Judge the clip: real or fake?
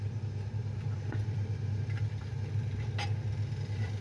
real